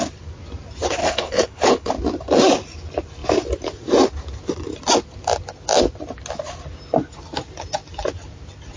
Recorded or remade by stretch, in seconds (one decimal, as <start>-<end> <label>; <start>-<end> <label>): 0.0-1.0 recorded; 1.0-1.9 remade; 1.9-8.8 recorded